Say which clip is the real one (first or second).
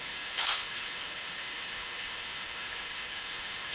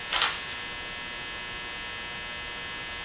second